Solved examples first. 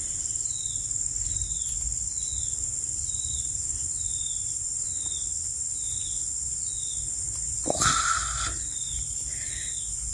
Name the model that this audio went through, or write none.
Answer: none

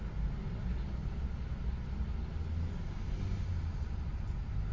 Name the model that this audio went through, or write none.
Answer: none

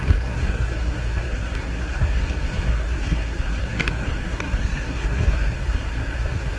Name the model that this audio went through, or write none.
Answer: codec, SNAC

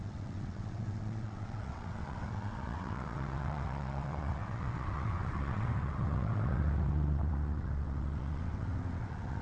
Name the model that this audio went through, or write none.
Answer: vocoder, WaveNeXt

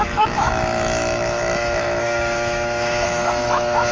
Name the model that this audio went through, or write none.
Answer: autoencoder, DAC-VAE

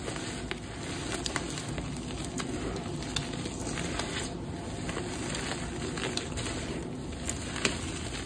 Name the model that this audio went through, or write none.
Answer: none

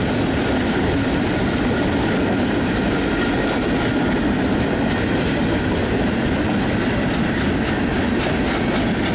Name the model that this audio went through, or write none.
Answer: none